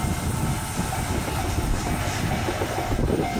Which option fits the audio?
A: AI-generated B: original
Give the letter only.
B